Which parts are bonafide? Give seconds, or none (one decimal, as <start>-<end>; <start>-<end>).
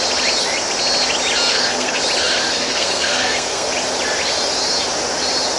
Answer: 0.0-1.5; 2.0-2.5; 3.7-5.6